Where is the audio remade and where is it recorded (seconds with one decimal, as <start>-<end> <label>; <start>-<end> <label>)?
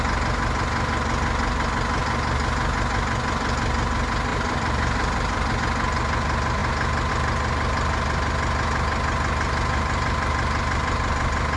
0.0-4.3 recorded; 4.3-5.6 remade; 5.6-11.6 recorded